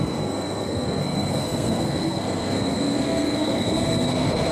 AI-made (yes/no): yes